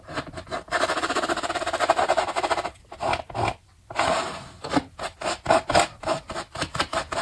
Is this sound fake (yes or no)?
yes